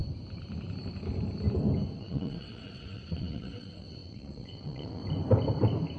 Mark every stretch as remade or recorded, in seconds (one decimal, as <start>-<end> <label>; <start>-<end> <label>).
0.0-2.0 recorded; 2.0-5.0 remade; 5.0-6.0 recorded